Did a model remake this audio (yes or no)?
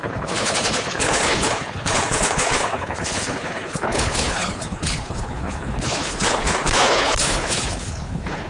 yes